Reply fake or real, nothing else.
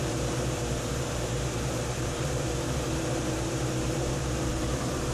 fake